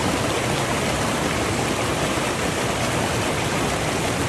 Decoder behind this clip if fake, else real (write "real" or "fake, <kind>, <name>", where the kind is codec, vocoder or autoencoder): real